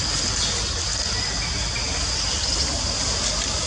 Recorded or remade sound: recorded